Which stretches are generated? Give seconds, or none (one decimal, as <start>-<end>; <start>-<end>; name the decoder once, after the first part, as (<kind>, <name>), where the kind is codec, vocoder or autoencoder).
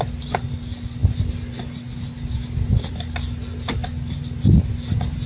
none